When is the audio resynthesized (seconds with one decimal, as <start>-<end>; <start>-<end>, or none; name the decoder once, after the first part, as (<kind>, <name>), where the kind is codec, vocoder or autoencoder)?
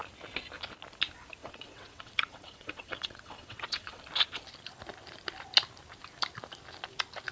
1.4-4.0 (vocoder, WaveNeXt)